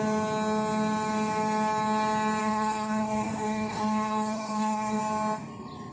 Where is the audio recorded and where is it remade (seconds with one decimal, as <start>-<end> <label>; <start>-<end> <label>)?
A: 0.0-2.4 recorded; 2.4-5.0 remade; 5.0-5.9 recorded